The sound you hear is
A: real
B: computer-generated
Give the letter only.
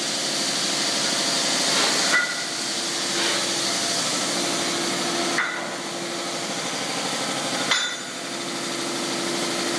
A